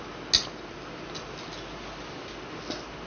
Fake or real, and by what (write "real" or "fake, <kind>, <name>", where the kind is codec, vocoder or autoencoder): real